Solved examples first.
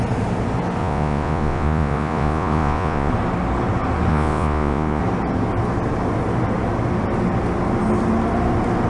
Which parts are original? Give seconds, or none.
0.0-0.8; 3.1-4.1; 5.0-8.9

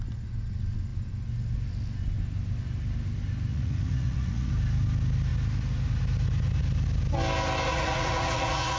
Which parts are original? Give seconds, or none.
0.0-3.5; 4.5-7.7

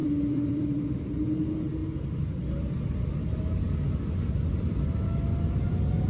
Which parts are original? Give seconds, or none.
1.1-6.1

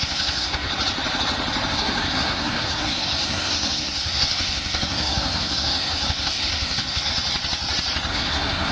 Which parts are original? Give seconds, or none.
0.7-1.7; 7.1-8.1